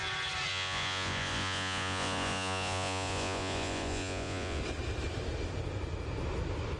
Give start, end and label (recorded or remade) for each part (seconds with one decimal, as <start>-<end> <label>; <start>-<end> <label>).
0.0-0.5 recorded; 0.5-4.6 remade; 4.6-6.8 recorded